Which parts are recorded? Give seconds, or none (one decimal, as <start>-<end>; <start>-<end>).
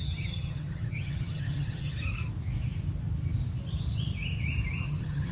1.9-4.8